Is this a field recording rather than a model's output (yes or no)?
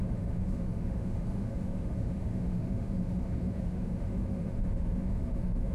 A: no